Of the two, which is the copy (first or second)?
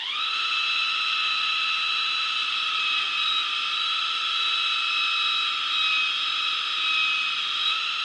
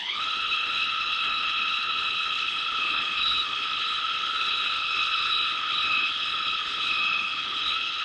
second